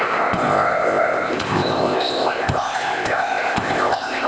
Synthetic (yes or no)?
yes